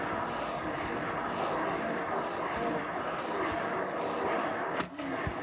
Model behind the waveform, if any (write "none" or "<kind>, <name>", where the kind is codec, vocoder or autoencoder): vocoder, BigVGAN v2